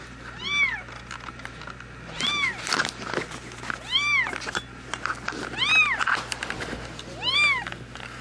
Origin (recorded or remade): recorded